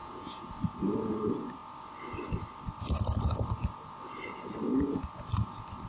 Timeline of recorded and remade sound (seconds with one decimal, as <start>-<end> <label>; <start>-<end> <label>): 0.0-0.5 remade; 0.5-5.9 recorded